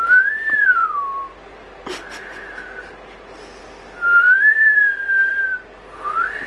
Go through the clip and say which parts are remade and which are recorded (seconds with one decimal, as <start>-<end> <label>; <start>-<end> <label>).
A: 0.0-6.5 remade